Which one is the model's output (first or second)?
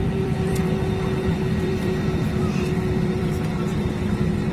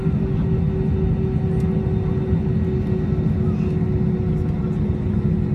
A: first